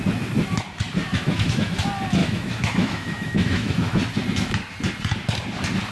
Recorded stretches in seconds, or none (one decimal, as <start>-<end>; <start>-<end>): 0.0-1.1; 1.7-2.2; 4.0-5.9